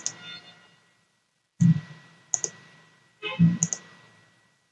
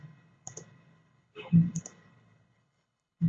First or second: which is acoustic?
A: first